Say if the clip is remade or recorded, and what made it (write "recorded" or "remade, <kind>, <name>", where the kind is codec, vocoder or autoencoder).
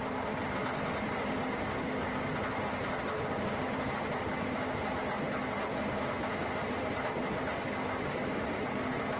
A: recorded